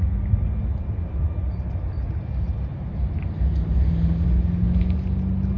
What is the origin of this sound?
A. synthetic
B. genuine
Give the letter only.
B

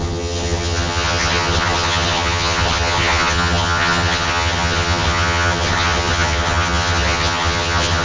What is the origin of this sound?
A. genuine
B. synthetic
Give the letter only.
B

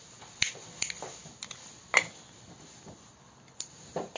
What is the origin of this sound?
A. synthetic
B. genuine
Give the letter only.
B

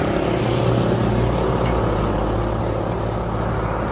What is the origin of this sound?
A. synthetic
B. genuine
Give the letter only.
B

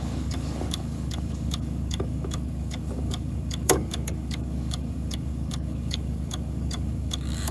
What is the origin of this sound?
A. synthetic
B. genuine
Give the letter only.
A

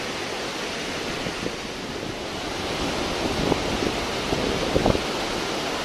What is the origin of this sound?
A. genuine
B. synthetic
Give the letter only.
A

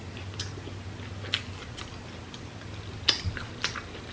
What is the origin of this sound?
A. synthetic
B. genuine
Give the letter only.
B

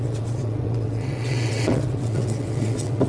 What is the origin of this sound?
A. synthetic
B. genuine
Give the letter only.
A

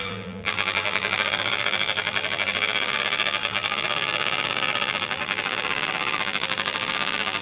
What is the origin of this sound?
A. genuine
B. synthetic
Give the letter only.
B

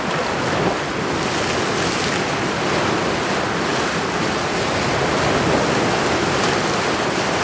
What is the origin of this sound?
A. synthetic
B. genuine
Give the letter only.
B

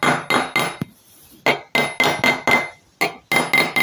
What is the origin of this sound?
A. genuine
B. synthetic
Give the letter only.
A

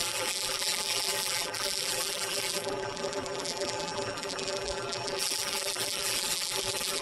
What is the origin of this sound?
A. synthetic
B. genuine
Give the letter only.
A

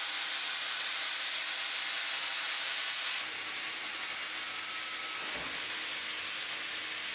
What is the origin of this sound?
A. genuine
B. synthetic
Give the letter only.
A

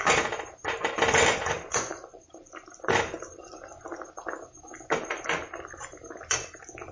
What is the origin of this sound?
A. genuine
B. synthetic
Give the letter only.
B